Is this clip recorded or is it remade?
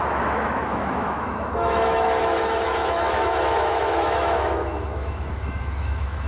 remade